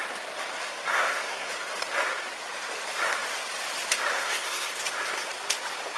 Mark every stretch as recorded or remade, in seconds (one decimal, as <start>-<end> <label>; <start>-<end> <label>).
0.0-0.9 recorded; 0.9-1.5 remade; 1.5-4.1 recorded; 4.1-4.7 remade; 4.7-6.0 recorded